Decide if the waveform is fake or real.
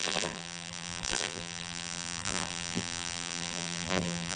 fake